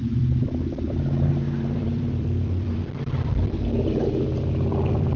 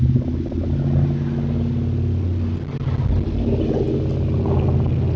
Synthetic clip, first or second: first